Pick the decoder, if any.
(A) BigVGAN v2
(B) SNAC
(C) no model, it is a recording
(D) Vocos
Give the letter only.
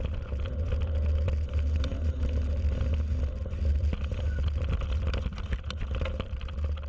C